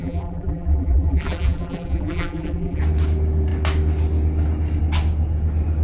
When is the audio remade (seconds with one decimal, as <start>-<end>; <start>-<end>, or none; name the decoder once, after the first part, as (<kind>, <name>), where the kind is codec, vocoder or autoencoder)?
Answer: 0.0-2.8 (vocoder, BigVGAN v2)